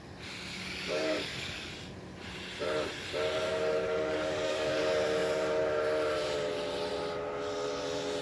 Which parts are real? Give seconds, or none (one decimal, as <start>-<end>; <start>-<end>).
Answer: 0.0-0.5; 1.7-3.7; 4.8-8.2